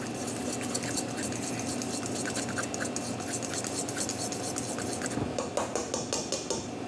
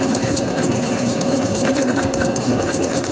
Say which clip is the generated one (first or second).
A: second